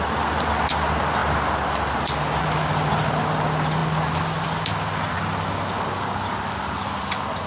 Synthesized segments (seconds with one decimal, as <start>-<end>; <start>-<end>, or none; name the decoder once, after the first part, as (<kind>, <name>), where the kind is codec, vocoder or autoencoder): none